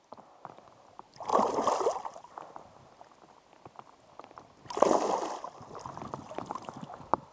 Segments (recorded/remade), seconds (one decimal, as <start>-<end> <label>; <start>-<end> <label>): 0.0-7.3 recorded